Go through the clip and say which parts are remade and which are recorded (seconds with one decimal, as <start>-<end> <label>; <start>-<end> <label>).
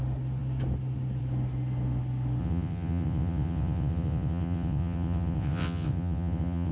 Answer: 0.0-2.4 recorded; 2.4-6.7 remade